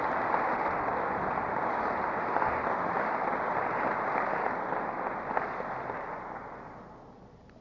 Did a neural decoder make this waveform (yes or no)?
no